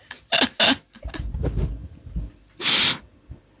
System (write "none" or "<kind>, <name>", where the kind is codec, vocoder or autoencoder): none